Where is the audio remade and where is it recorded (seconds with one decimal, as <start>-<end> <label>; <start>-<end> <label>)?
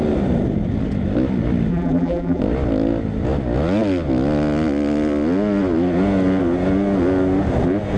0.0-1.7 recorded; 1.7-2.4 remade; 2.4-8.0 recorded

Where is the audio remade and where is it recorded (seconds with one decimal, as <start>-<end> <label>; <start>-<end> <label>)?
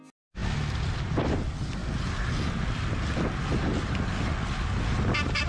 0.0-5.5 recorded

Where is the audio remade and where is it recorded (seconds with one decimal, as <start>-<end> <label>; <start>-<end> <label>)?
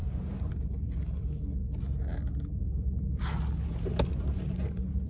0.0-0.5 remade; 0.5-5.1 recorded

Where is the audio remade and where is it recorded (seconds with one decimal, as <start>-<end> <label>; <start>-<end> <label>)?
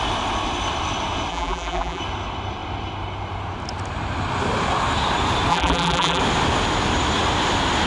0.0-1.3 recorded; 1.3-2.0 remade; 2.0-5.5 recorded; 5.5-6.2 remade; 6.2-7.9 recorded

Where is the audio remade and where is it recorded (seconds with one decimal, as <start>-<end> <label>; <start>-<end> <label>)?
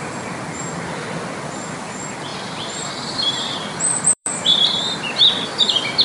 0.0-2.3 recorded; 2.3-5.3 remade; 5.3-6.0 recorded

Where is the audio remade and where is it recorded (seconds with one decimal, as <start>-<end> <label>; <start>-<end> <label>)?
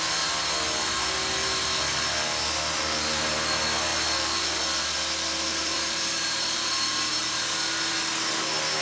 0.0-3.9 recorded; 3.9-4.6 remade; 4.6-5.5 recorded; 5.5-6.6 remade; 6.6-8.8 recorded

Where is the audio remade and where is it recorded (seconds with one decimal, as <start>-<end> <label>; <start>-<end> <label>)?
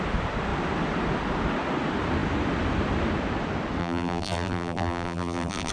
0.0-3.8 recorded; 3.8-5.7 remade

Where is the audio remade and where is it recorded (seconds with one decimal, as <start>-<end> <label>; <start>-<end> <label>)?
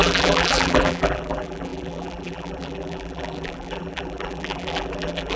0.0-5.4 remade